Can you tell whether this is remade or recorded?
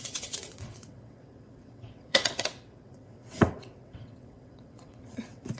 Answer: remade